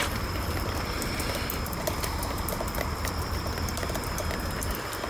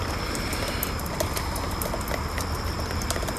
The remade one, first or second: first